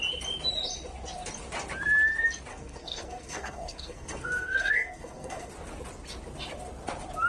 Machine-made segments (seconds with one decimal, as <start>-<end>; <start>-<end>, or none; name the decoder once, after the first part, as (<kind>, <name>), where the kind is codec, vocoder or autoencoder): 2.5-5.5 (codec, SNAC)